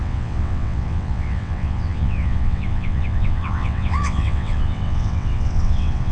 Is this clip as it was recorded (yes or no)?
no